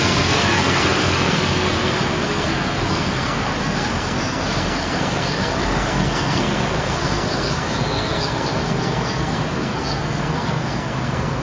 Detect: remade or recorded remade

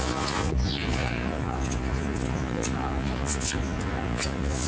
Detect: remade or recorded remade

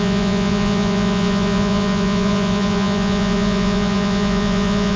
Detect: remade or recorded remade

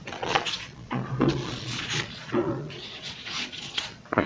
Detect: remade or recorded remade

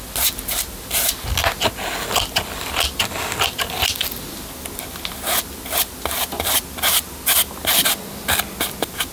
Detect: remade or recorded recorded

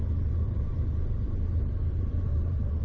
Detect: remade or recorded remade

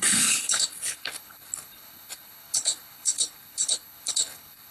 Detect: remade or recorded remade